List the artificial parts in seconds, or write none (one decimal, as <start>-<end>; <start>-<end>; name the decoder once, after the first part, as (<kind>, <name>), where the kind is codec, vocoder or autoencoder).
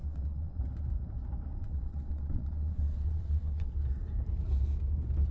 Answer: 0.0-0.6 (vocoder, WaveNeXt); 1.6-3.7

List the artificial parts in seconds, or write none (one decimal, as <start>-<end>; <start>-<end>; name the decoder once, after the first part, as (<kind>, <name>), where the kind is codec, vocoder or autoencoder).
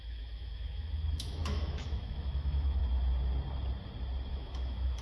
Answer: 0.0-2.8 (autoencoder, DAC-VAE); 4.3-5.0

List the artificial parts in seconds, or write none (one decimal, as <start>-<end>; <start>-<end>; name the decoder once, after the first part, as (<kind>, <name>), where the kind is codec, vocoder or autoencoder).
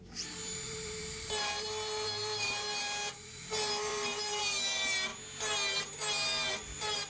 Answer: 0.0-5.1 (vocoder, BigVGAN v2); 6.5-7.1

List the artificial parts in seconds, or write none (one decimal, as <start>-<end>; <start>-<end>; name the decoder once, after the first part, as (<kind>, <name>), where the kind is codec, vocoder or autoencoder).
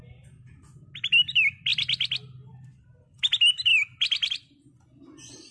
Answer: none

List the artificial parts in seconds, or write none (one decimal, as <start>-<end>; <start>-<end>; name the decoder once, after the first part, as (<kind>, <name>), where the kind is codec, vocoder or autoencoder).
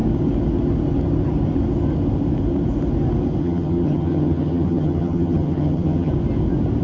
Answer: 3.4-6.1 (vocoder, HiFi-GAN)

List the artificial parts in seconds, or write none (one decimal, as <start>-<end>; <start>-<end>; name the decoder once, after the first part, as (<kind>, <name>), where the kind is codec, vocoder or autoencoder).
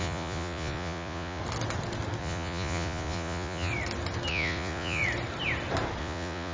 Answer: 0.0-1.4 (vocoder, Vocos); 2.2-3.7; 4.3-5.0; 6.0-6.5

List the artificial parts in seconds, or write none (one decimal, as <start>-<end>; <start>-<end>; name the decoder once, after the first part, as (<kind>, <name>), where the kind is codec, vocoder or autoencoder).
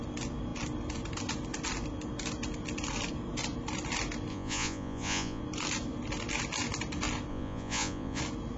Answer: 4.3-5.4 (vocoder, Vocos); 7.3-8.2